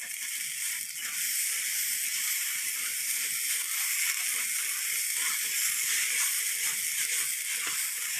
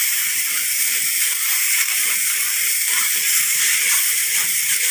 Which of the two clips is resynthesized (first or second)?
second